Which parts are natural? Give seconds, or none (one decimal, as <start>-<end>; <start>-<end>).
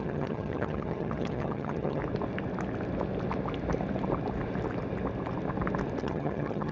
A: 2.0-6.0